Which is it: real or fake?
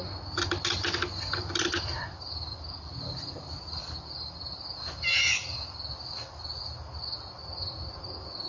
real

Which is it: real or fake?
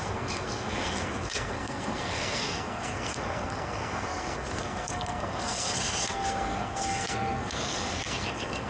fake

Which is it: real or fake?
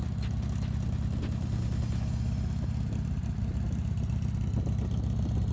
real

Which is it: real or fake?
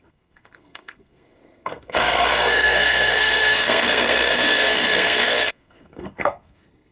fake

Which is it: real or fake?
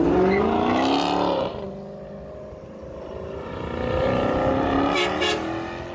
real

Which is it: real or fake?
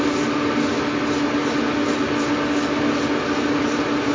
real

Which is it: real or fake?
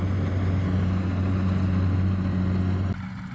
real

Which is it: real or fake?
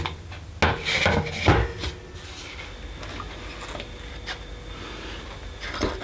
real